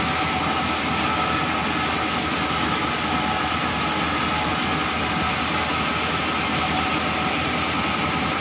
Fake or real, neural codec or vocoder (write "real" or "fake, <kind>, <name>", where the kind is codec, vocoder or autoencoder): real